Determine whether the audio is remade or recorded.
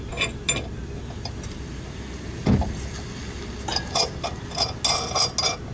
recorded